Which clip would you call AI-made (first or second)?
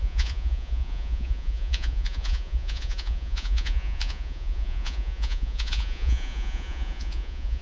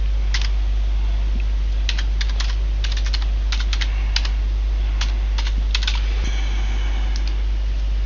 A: first